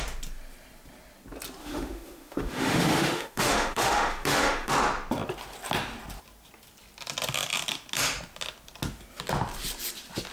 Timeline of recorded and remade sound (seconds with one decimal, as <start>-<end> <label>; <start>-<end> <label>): 0.0-1.6 recorded; 1.6-4.7 remade; 4.7-10.3 recorded